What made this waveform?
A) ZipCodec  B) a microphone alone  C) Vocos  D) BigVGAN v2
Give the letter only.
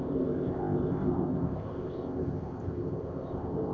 A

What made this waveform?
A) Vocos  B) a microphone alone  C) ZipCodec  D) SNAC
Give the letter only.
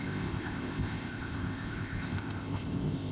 C